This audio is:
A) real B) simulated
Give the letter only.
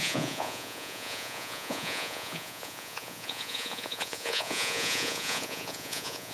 B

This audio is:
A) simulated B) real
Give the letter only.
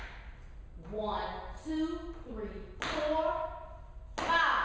B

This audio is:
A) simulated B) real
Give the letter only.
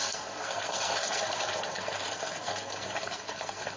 A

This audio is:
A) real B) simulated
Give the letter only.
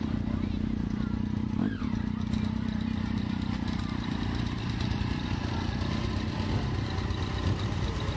A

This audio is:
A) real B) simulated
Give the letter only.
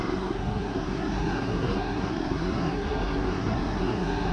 B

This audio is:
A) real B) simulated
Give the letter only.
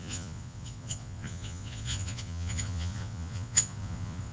B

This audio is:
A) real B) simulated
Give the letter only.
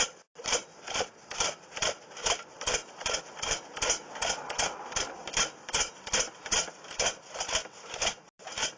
A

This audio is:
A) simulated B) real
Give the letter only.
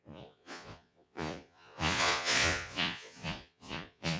A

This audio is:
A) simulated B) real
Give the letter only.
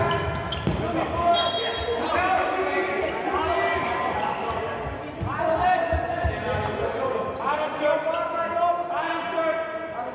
B